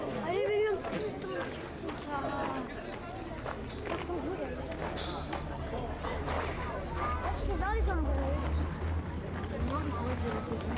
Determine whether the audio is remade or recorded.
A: recorded